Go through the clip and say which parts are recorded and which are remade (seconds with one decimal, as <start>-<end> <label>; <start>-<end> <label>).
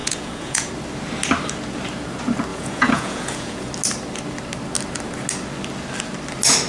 0.0-0.7 remade; 0.7-2.5 recorded; 2.5-3.7 remade; 3.7-6.7 recorded